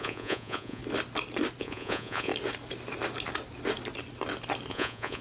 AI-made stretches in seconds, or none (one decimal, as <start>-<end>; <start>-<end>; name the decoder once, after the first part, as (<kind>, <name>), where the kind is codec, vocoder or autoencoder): 0.0-0.8 (vocoder, Vocos); 1.6-2.3; 4.7-5.2